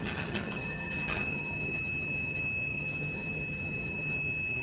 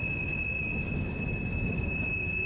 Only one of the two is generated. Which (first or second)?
first